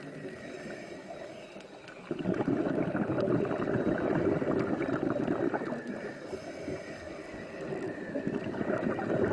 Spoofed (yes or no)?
no